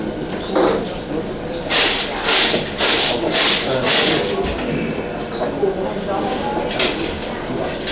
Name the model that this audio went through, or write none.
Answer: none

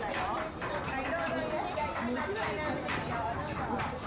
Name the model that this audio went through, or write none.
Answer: none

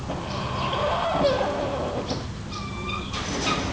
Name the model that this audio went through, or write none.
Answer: none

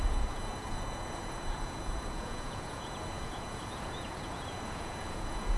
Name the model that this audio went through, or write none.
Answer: vocoder, Vocos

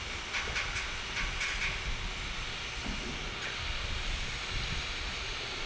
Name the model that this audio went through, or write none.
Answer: none